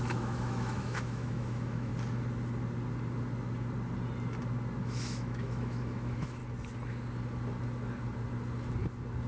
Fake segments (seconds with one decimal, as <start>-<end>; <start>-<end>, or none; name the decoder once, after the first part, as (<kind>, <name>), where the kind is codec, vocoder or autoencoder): 0.0-1.9 (autoencoder, DAC-VAE); 4.8-6.4